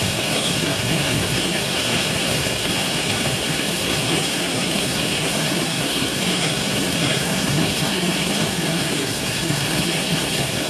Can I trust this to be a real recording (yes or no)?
no